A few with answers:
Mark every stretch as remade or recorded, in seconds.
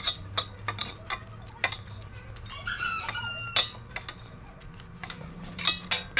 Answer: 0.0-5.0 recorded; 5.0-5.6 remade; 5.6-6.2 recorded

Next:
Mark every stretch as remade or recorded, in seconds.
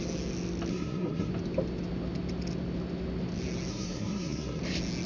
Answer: 0.0-0.7 recorded; 0.7-1.3 remade; 1.3-3.7 recorded; 3.7-4.6 remade; 4.6-5.1 recorded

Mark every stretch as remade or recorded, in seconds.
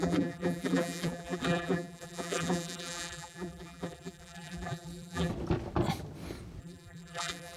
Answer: 0.0-5.3 remade; 5.3-6.6 recorded; 6.6-7.6 remade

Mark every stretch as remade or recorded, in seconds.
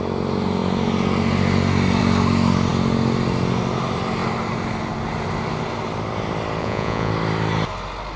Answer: 0.0-6.6 recorded; 6.6-7.1 remade; 7.1-8.2 recorded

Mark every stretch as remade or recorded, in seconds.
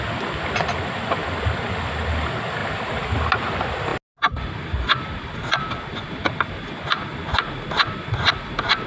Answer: 0.0-8.9 recorded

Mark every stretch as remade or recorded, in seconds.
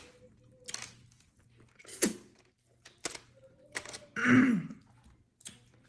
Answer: 0.0-5.9 recorded